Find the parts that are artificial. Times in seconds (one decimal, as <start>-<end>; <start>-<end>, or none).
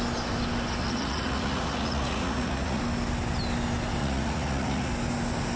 0.8-2.8; 4.0-4.9